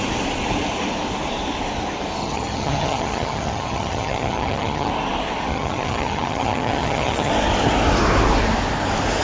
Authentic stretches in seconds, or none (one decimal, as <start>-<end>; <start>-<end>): 0.0-2.2; 4.9-5.5; 7.3-9.2